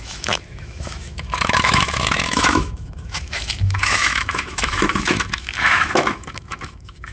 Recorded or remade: remade